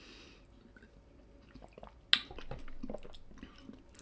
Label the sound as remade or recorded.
recorded